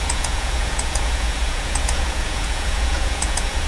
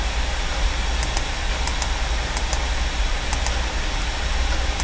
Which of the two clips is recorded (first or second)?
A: second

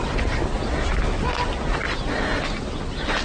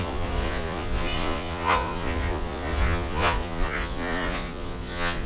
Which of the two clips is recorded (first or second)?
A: first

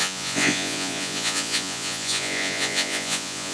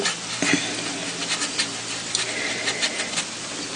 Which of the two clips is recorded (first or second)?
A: second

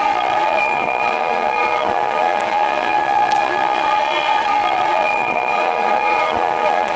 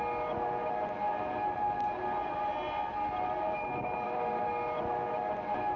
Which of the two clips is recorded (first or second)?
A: second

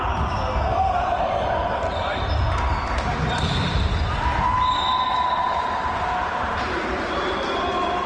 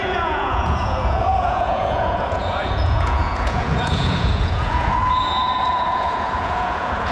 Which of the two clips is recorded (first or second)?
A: first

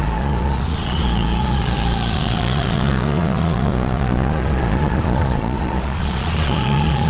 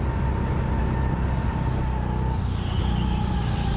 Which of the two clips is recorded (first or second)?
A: second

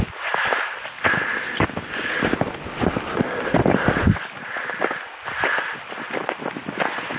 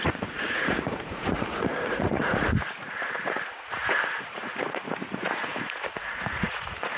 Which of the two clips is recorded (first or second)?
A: first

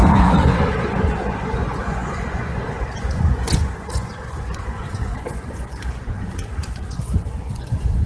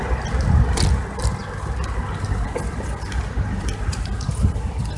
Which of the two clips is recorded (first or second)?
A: second